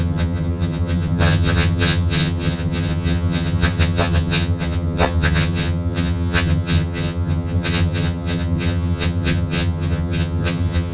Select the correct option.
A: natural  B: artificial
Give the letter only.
B